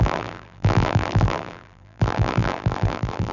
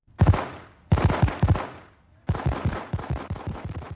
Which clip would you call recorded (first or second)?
second